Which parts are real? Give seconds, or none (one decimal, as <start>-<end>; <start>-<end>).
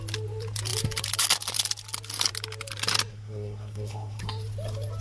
0.0-3.1; 4.2-5.0